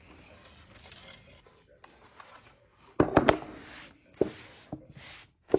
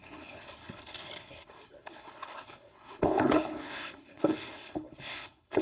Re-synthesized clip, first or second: second